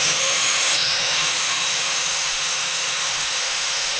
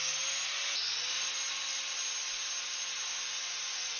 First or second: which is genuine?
second